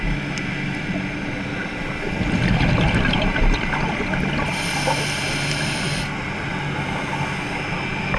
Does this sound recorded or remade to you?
recorded